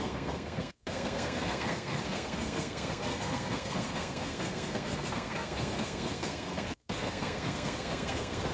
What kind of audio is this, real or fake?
fake